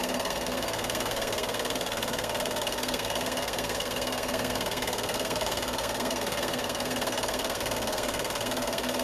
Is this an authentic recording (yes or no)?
no